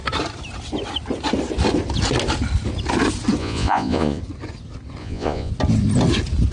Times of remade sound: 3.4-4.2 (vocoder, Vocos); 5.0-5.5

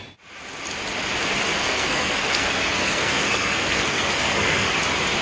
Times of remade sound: 1.6-4.7 (codec, SNAC)

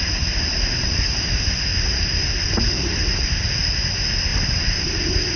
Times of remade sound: none

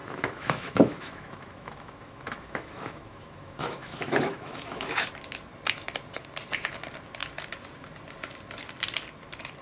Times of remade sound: 0.0-5.1 (autoencoder, DAC-VAE)